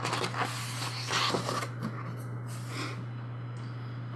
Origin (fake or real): real